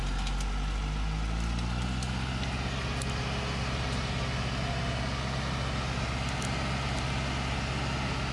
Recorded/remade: recorded